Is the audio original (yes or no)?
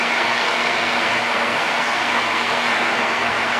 no